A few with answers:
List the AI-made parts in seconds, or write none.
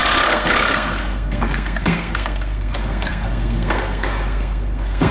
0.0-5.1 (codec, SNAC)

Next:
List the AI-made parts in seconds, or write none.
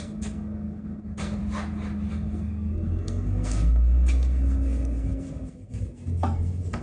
0.0-1.4 (codec, SNAC); 2.1-6.8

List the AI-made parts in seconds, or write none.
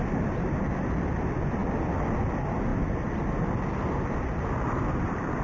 none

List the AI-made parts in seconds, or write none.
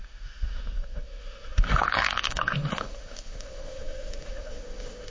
0.0-5.1 (autoencoder, DAC-VAE)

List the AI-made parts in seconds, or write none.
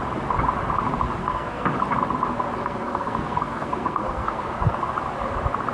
1.2-1.7 (codec, SNAC); 2.6-4.8